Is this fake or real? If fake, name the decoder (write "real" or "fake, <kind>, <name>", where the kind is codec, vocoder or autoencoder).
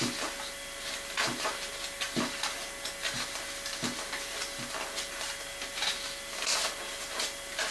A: real